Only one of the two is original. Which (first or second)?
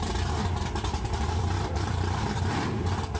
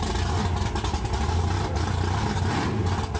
second